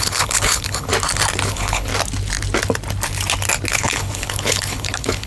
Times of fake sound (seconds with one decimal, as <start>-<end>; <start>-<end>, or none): 0.0-0.9; 1.5-1.9; 3.7-5.3